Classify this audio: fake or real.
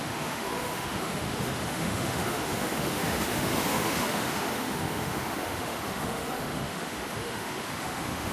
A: fake